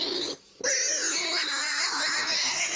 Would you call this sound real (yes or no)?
yes